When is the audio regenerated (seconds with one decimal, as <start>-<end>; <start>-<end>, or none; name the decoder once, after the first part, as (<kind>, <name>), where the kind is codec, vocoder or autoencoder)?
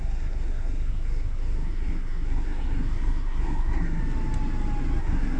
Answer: 0.0-4.0 (codec, SNAC); 5.0-5.4